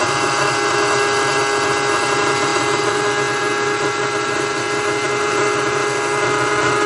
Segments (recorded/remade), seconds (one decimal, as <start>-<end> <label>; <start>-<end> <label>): 0.0-6.9 recorded